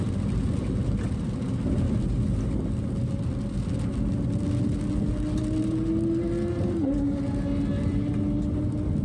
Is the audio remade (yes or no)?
no